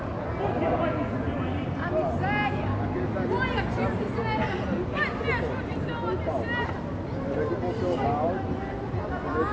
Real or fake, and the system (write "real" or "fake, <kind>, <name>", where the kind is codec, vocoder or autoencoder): real